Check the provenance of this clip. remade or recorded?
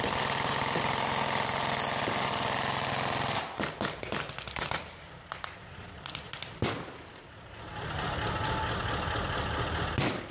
recorded